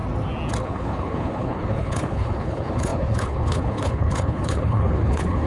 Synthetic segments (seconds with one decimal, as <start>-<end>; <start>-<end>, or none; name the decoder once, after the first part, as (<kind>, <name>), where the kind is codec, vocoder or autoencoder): 0.6-5.5 (codec, HILCodec)